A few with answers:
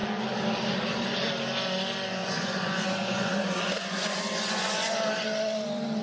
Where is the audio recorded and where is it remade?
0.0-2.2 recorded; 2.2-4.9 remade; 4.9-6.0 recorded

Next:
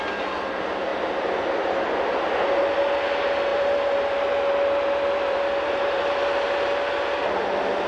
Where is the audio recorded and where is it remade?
0.0-0.9 recorded; 0.9-1.9 remade; 1.9-3.5 recorded; 3.5-6.1 remade; 6.1-7.9 recorded